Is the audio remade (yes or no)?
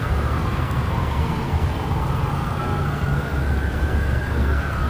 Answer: yes